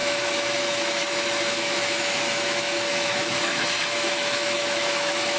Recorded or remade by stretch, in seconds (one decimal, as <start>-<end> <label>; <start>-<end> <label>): 0.0-5.4 remade